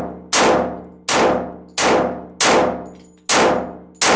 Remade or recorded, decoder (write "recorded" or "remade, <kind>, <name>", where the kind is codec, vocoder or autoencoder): recorded